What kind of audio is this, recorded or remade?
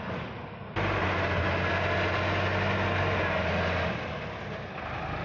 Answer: recorded